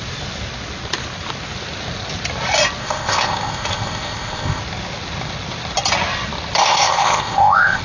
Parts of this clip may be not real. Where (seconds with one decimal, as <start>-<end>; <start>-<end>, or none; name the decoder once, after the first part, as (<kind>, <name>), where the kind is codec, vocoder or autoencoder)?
2.8-4.6 (codec, ZipCodec); 6.6-7.8